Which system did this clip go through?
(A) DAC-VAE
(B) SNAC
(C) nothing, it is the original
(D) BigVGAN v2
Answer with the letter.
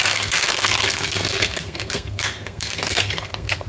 B